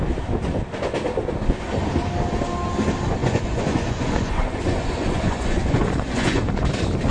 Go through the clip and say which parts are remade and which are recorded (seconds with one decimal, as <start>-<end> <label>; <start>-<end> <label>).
0.0-3.2 recorded; 3.2-6.5 remade; 6.5-7.1 recorded